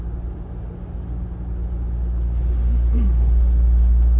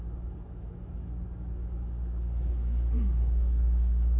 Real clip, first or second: first